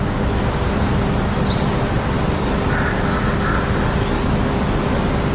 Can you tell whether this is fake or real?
real